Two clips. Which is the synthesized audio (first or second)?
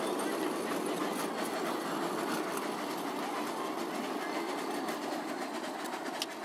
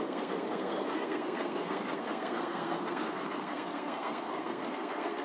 second